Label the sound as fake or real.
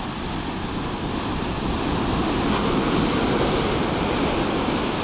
real